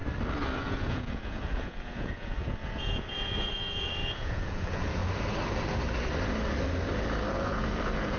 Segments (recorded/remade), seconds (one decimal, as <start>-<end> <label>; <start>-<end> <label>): 0.0-0.6 recorded; 0.6-5.0 remade; 5.0-7.3 recorded; 7.3-8.2 remade